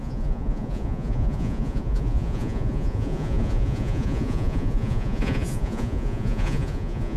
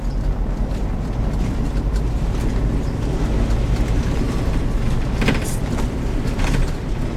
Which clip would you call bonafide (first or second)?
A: second